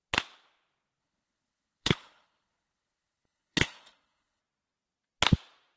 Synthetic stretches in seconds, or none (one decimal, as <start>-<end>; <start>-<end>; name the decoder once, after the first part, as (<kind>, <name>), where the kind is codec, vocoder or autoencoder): 1.0-4.4 (codec, HILCodec)